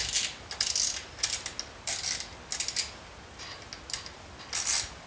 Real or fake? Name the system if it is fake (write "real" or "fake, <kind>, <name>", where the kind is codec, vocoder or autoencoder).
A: real